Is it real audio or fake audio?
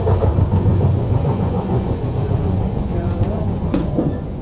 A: fake